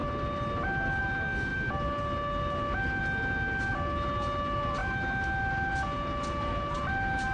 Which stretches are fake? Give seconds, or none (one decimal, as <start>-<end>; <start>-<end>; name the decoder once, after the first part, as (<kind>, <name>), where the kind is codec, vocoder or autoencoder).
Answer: none